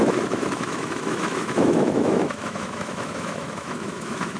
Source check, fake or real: fake